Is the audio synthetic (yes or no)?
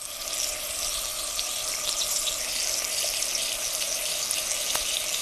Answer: no